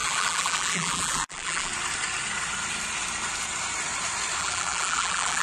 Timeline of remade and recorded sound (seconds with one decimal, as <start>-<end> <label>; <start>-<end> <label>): 0.0-1.7 remade; 1.7-4.4 recorded; 4.4-5.4 remade